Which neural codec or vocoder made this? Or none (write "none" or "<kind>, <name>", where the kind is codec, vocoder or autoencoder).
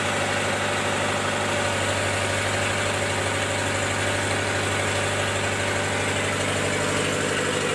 none